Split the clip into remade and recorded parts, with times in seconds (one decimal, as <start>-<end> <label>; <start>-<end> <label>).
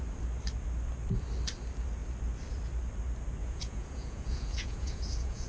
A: 0.0-3.4 recorded; 3.4-5.5 remade